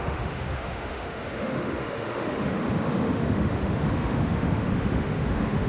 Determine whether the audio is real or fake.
fake